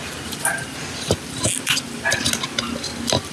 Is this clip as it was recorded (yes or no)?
yes